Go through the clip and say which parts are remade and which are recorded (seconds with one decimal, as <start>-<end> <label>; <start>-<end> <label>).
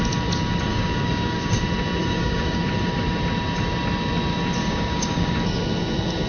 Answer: 0.0-0.7 recorded; 0.7-1.6 remade; 1.6-2.0 recorded; 2.0-2.6 remade; 2.6-4.6 recorded; 4.6-5.3 remade; 5.3-6.3 recorded